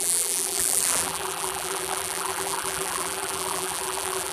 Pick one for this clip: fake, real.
fake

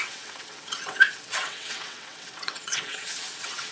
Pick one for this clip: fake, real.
fake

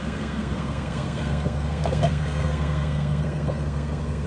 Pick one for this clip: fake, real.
fake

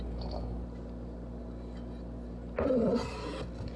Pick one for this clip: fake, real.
real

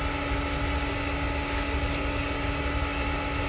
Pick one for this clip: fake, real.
real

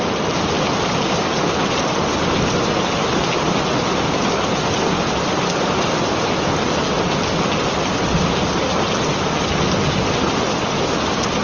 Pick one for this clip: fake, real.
real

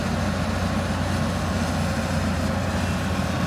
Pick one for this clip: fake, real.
real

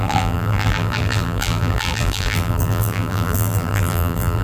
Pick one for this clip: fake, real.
fake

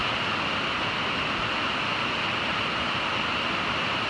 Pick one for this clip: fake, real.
real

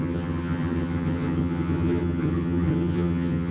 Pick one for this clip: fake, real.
fake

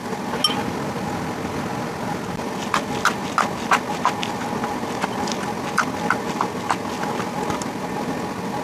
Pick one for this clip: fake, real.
real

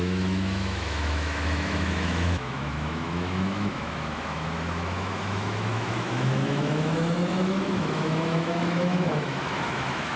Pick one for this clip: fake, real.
fake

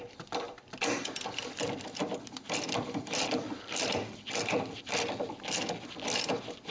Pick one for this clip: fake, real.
fake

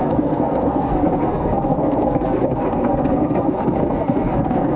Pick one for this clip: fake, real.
fake